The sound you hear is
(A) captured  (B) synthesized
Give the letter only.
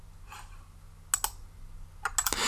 A